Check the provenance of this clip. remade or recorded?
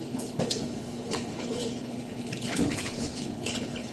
remade